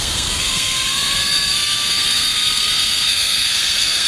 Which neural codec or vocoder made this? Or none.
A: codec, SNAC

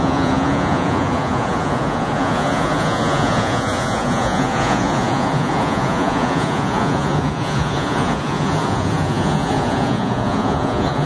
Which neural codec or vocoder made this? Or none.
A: vocoder, Vocos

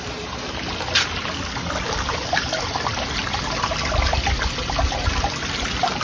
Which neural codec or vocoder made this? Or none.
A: none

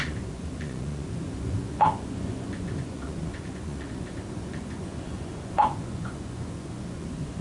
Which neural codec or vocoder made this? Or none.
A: vocoder, Vocos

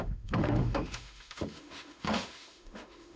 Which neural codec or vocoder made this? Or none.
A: autoencoder, DAC-VAE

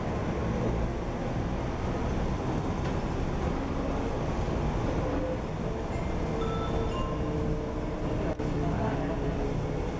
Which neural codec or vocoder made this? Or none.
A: none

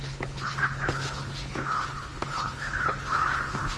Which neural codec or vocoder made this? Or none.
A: codec, HILCodec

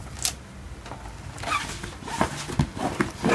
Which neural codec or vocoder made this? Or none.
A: none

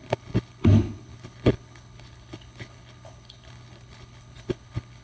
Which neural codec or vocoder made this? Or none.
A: codec, HILCodec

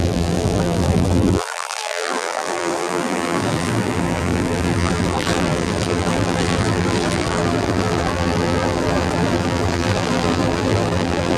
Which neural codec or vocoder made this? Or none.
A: vocoder, BigVGAN v2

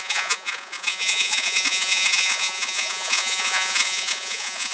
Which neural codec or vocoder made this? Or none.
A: vocoder, Vocos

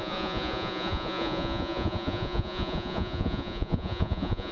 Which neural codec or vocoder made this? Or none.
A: vocoder, Vocos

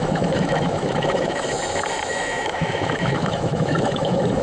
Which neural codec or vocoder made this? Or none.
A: autoencoder, DAC-VAE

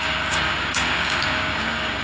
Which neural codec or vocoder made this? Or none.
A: codec, DAC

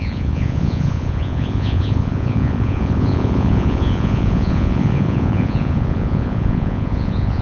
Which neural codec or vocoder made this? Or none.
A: vocoder, Vocos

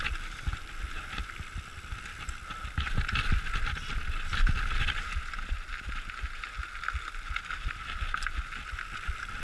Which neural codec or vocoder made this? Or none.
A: none